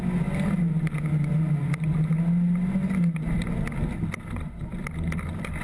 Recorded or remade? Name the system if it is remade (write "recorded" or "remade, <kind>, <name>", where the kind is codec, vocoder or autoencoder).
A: recorded